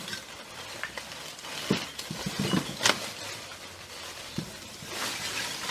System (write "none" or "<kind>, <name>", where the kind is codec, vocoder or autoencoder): none